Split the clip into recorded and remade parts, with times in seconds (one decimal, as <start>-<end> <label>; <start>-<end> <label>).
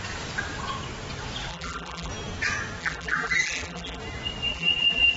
0.0-1.5 recorded; 1.5-2.1 remade; 2.1-2.8 recorded; 2.8-4.0 remade; 4.0-4.5 recorded; 4.5-5.2 remade